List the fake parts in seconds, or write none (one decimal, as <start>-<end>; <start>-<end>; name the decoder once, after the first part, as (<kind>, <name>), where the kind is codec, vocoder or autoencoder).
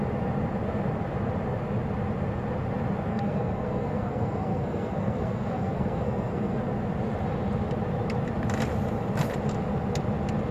3.1-6.6 (codec, SNAC)